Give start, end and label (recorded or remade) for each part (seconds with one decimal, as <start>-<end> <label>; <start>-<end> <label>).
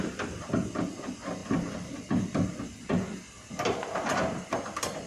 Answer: 0.0-5.1 recorded